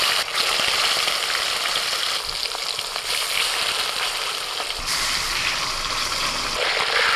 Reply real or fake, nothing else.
fake